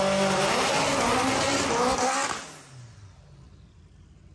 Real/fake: real